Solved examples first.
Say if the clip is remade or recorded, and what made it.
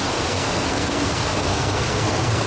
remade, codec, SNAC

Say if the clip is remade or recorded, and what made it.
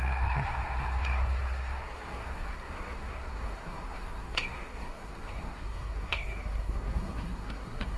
remade, codec, SNAC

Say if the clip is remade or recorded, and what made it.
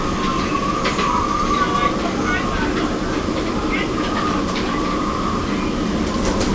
recorded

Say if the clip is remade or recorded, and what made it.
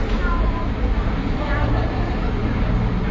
recorded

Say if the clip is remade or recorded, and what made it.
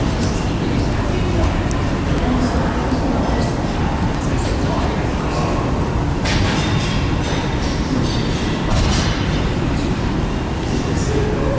recorded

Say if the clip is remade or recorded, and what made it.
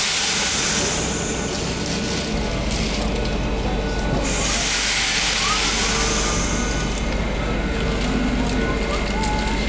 recorded